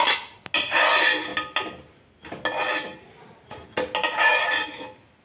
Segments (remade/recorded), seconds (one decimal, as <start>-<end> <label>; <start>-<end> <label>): 0.0-5.2 recorded

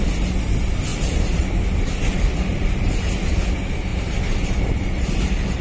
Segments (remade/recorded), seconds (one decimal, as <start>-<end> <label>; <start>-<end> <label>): 0.0-0.9 recorded; 0.9-1.5 remade; 1.5-2.5 recorded; 2.5-3.2 remade; 3.2-3.9 recorded; 3.9-5.6 remade

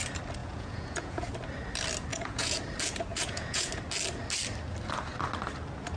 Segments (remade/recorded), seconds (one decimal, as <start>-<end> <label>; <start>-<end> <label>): 0.0-0.4 recorded; 0.4-1.3 remade; 1.3-2.1 recorded; 2.1-2.6 remade; 2.6-3.1 recorded; 3.1-3.7 remade; 3.7-6.0 recorded

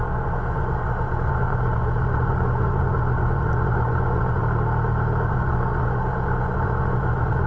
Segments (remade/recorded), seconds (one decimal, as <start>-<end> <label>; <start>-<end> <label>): 0.0-4.4 remade; 4.4-5.3 recorded; 5.3-7.5 remade

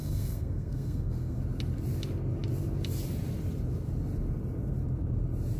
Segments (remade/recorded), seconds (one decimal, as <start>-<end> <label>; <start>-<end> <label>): 0.0-1.4 remade; 1.4-5.6 recorded

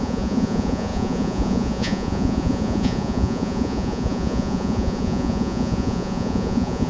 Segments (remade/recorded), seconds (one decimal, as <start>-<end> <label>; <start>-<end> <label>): 0.0-6.9 remade